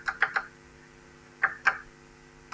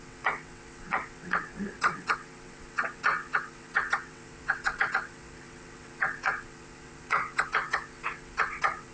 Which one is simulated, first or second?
second